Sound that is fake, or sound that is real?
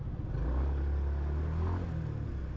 real